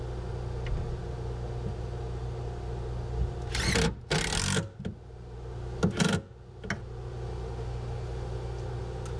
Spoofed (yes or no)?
no